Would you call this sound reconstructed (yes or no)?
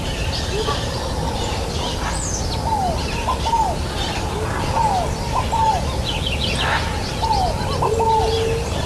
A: no